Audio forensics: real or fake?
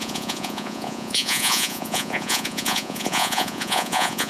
fake